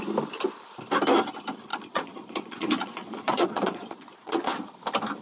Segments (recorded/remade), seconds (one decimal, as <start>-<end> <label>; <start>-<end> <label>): 0.0-1.7 recorded; 1.7-4.8 remade; 4.8-5.2 recorded